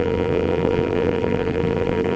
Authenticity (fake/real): fake